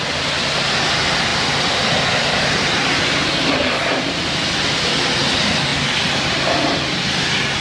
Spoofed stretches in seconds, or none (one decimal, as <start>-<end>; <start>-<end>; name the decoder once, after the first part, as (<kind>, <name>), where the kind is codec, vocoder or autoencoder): none